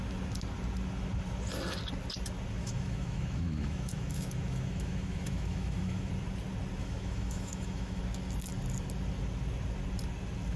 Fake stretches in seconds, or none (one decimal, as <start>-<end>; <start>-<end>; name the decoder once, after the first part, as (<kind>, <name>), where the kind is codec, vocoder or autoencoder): 2.6-6.1 (autoencoder, DAC-VAE); 6.8-8.0